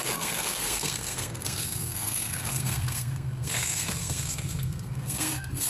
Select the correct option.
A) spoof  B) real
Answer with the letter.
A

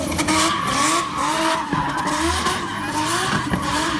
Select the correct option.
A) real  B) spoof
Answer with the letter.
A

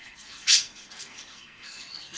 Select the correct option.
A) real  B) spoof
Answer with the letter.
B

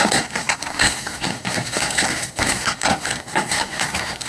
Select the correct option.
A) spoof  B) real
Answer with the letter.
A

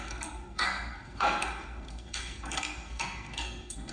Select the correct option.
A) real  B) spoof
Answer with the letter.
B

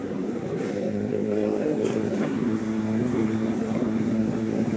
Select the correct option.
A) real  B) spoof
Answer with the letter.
B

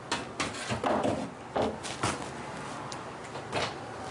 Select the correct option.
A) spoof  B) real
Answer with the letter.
B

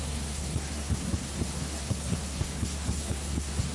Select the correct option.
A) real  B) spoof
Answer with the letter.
B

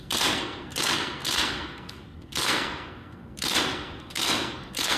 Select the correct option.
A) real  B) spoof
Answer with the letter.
B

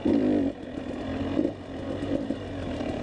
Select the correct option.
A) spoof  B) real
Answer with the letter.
B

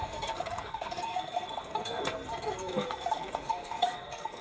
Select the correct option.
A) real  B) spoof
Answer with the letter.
B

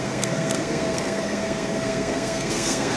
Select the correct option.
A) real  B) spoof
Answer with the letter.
B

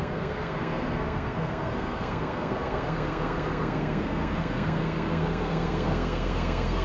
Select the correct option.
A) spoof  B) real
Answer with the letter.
A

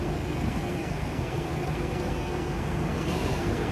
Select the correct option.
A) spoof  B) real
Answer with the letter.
A